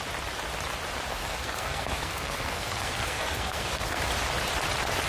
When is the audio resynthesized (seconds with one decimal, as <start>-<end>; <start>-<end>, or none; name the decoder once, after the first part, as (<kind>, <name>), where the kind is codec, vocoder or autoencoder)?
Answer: 1.1-4.0 (codec, SNAC)